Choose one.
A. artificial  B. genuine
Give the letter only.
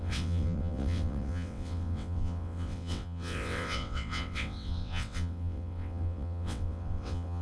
A